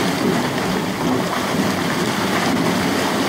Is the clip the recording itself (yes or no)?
yes